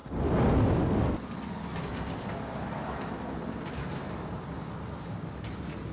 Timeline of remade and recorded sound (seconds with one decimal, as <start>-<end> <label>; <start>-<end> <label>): 0.0-5.9 recorded